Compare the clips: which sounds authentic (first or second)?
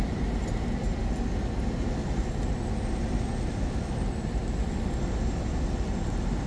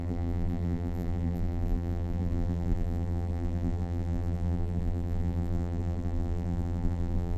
first